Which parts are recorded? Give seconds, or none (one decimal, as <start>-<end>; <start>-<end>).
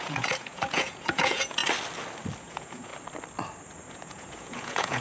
1.6-2.4; 2.9-3.9